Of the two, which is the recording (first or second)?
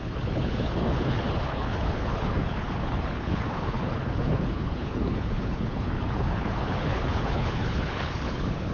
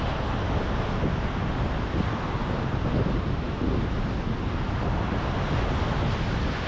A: second